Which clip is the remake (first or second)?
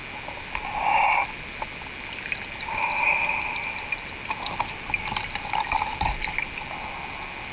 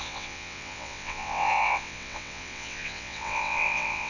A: second